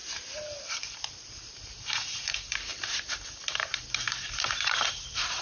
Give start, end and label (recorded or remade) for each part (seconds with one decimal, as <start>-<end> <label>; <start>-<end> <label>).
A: 0.0-0.7 recorded; 0.7-5.4 remade